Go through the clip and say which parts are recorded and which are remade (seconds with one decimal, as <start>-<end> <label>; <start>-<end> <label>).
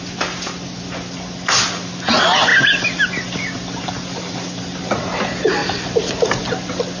0.0-7.0 recorded